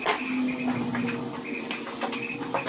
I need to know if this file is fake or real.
real